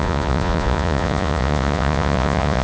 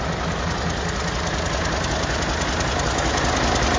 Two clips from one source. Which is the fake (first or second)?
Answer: first